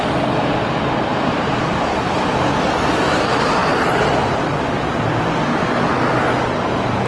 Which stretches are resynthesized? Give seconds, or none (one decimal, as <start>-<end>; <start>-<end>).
1.1-2.3